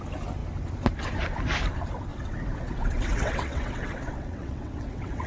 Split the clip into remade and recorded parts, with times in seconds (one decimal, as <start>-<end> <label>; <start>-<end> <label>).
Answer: 0.0-2.1 recorded; 2.1-5.3 remade